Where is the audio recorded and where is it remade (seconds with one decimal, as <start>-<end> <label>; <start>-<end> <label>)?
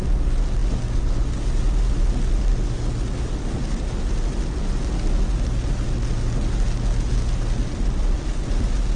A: 0.0-9.0 recorded